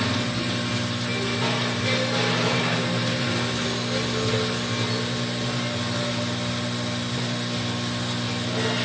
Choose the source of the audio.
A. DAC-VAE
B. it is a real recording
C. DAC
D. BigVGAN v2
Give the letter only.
B